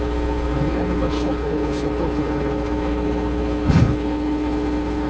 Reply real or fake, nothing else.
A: fake